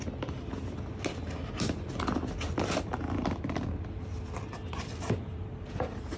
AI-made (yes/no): no